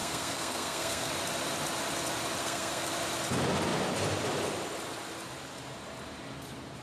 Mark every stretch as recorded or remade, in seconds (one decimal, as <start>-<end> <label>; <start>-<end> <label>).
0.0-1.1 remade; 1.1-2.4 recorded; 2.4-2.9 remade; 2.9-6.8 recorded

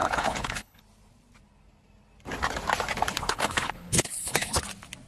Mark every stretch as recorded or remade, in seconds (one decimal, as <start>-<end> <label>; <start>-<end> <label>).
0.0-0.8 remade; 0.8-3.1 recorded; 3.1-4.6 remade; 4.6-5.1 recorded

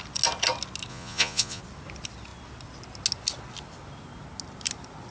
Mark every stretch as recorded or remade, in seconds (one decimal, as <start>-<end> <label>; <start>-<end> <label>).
0.0-0.9 recorded; 0.9-1.6 remade; 1.6-5.1 recorded